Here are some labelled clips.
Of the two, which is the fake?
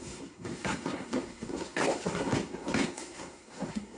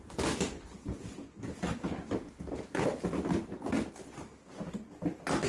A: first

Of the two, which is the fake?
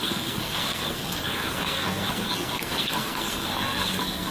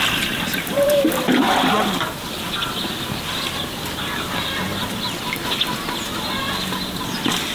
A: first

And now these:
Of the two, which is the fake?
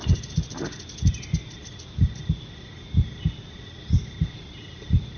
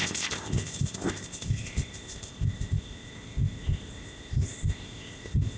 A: second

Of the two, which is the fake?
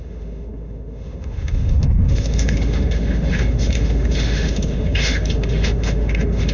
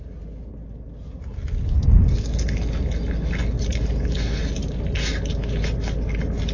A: first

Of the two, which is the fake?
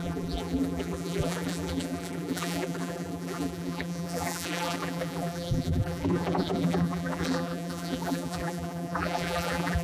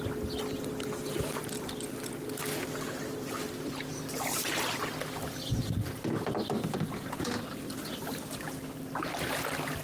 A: first